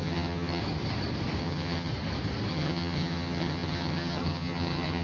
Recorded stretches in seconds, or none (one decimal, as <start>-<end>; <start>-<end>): 0.6-1.4; 1.9-2.5

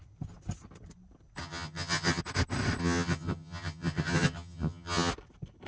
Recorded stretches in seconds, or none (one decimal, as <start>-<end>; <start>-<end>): 0.0-1.4; 2.2-2.8; 5.1-5.7

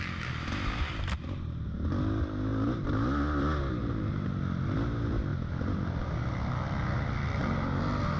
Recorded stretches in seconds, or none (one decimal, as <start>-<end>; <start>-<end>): 0.0-8.2

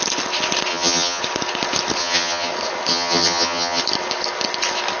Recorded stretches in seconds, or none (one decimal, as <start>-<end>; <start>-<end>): 0.0-0.7; 1.2-2.0; 2.5-2.9; 3.8-5.0

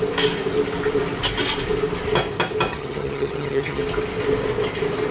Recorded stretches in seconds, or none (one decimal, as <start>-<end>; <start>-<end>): 0.0-2.7; 3.8-5.1

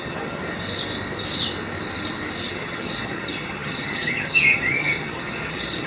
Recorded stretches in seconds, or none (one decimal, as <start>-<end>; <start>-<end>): 0.4-2.5